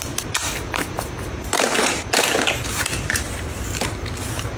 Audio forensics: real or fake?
fake